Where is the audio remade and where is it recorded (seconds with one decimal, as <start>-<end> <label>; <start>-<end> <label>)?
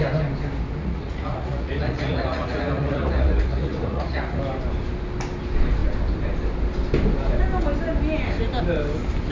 0.0-0.8 recorded; 0.8-4.4 remade; 4.4-9.3 recorded